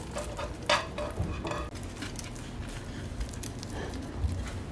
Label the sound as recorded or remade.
recorded